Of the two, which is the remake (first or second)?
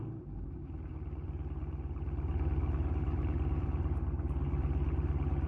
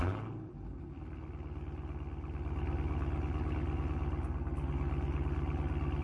first